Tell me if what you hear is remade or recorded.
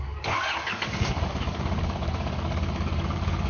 remade